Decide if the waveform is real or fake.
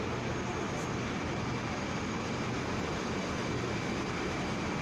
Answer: fake